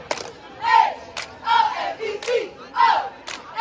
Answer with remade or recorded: recorded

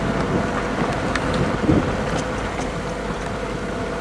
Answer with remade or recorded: recorded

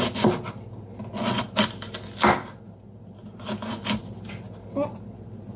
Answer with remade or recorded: recorded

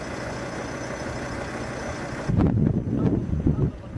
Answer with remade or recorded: remade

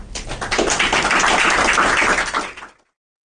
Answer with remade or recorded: recorded